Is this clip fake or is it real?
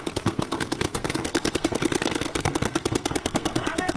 fake